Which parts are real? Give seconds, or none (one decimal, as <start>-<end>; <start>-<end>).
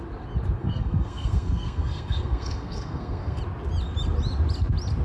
0.0-0.6; 3.4-5.0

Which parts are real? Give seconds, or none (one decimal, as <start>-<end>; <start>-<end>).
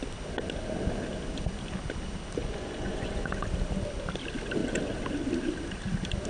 0.0-2.4; 3.3-6.3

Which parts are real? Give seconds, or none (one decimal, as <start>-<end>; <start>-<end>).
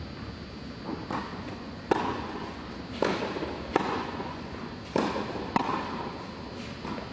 0.0-1.3; 2.7-3.7; 4.8-7.1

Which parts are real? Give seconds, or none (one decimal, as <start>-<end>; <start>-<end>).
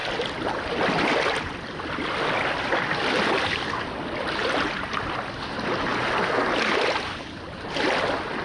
0.0-8.4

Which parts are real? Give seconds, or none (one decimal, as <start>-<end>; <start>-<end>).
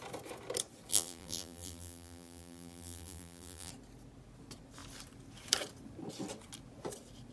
0.0-0.9; 3.7-7.3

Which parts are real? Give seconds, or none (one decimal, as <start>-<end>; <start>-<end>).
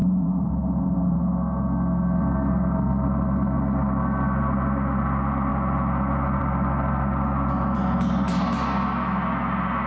1.2-9.9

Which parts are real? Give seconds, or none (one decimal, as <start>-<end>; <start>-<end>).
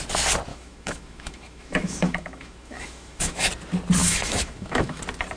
0.0-0.5; 3.5-4.0; 5.0-5.4